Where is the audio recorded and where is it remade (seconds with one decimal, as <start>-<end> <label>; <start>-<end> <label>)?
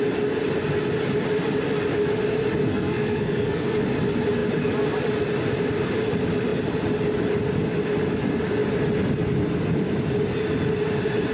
0.0-2.7 recorded; 2.7-3.8 remade; 3.8-11.3 recorded